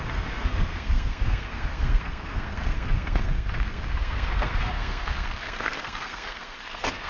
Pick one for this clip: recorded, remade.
remade